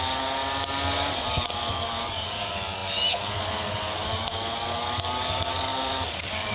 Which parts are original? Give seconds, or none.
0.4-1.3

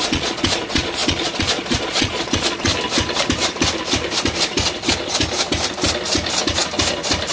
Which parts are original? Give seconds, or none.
2.7-7.3

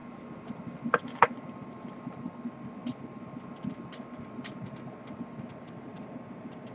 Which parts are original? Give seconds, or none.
0.0-6.7

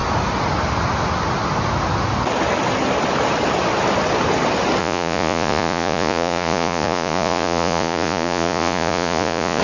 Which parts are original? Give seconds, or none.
0.0-4.8

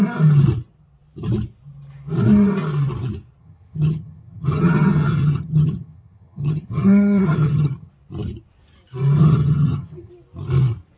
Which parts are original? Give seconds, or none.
0.0-3.4; 7.9-9.2; 10.1-11.0